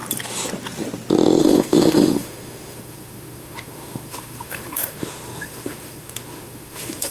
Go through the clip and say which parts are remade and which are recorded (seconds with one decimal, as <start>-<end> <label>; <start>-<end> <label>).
0.0-1.4 recorded; 1.4-7.1 remade